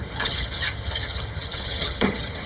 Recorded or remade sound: remade